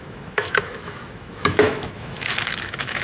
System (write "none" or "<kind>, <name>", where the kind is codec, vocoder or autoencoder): autoencoder, DAC-VAE